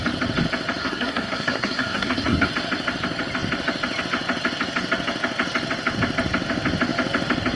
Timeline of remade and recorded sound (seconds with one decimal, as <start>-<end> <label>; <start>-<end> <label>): 0.0-0.8 recorded; 0.8-2.5 remade; 2.5-7.6 recorded